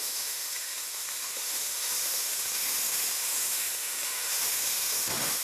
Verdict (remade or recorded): remade